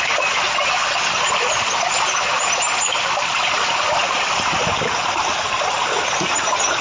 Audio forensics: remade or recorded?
recorded